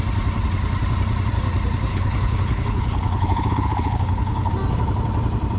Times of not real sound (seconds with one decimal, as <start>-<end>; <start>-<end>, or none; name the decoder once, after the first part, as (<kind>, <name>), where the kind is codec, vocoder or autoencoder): 1.9-4.5 (codec, HILCodec)